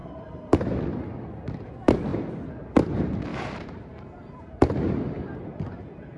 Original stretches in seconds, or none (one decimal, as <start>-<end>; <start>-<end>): 0.7-3.3; 5.6-6.2